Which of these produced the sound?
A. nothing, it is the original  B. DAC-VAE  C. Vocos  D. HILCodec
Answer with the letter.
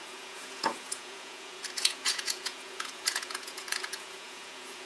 C